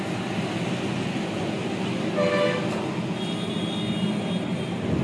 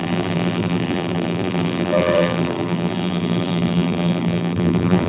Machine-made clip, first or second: second